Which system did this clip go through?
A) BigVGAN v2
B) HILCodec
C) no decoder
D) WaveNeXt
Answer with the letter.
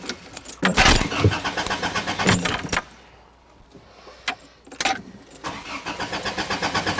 C